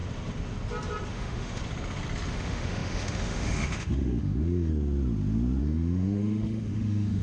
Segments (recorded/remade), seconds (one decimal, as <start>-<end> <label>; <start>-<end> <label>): 0.0-1.1 recorded; 1.1-1.6 remade; 1.6-2.3 recorded; 2.3-4.7 remade; 4.7-5.6 recorded; 5.6-7.2 remade